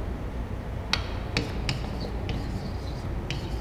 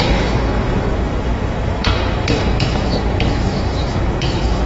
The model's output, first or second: second